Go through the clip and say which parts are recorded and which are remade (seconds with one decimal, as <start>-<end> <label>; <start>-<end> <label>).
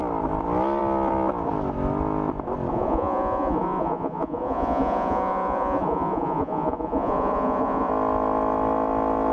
0.0-2.7 recorded; 2.7-7.9 remade; 7.9-9.3 recorded